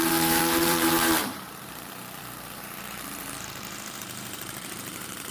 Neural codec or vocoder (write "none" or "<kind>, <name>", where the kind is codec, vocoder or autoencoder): vocoder, BigVGAN v2